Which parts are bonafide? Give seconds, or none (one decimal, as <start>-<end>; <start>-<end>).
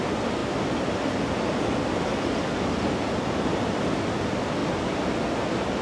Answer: 0.0-5.8